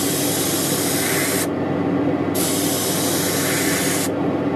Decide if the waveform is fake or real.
real